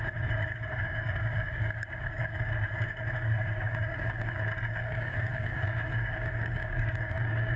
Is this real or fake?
fake